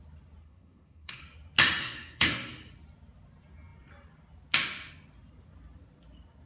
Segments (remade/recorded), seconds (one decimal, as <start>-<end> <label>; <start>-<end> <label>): 0.0-0.4 recorded; 0.4-1.2 remade; 1.2-1.8 recorded; 1.8-2.5 remade; 2.5-6.5 recorded